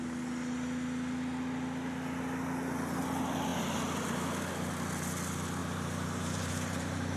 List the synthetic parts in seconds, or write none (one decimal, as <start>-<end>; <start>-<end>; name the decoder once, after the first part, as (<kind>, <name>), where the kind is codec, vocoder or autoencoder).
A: 5.6-7.2 (vocoder, BigVGAN v2)